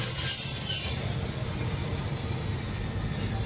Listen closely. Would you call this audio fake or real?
real